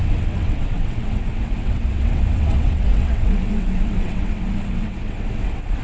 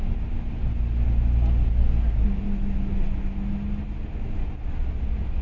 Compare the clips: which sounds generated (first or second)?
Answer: first